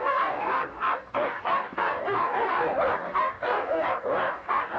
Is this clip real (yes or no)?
no